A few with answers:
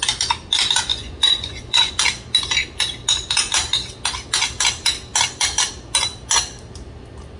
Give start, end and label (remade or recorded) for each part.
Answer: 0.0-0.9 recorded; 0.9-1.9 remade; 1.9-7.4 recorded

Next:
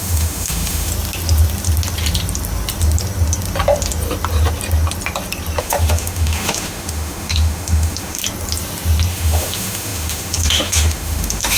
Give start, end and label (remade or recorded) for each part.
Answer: 0.0-0.9 remade; 0.9-5.6 recorded; 5.6-8.2 remade; 8.2-9.1 recorded; 9.1-11.6 remade

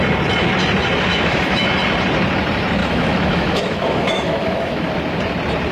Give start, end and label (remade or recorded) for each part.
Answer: 0.0-1.1 recorded; 1.1-1.7 remade; 1.7-2.8 recorded; 2.8-4.9 remade; 4.9-5.7 recorded

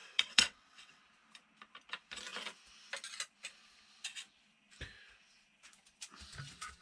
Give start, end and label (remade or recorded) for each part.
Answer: 0.0-1.0 remade; 1.0-6.8 recorded

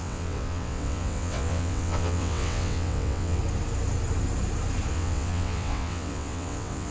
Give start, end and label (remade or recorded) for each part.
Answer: 0.0-3.4 remade; 3.4-4.9 recorded; 4.9-6.9 remade

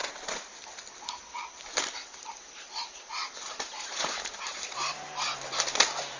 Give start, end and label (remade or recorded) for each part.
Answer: 0.0-0.6 remade; 0.6-2.0 recorded; 2.0-5.3 remade; 5.3-6.2 recorded

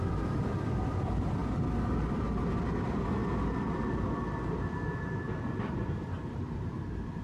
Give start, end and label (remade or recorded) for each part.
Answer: 0.0-1.4 remade; 1.4-2.4 recorded; 2.4-7.2 remade

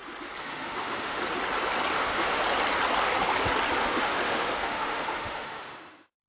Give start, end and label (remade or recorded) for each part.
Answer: 0.0-0.4 recorded; 0.4-1.2 remade; 1.2-1.9 recorded; 1.9-2.4 remade; 2.4-3.8 recorded; 3.8-6.3 remade